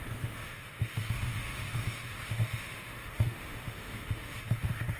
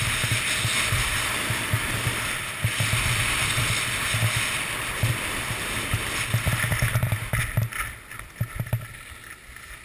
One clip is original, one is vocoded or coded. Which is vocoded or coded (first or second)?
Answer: first